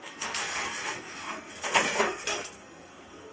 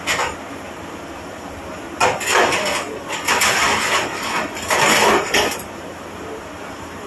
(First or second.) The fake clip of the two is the first